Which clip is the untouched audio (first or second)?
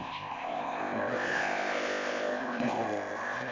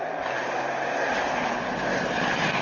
second